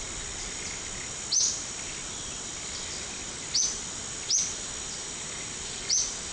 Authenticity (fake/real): real